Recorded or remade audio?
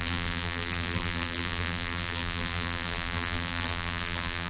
remade